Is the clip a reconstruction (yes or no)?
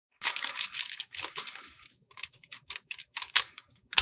yes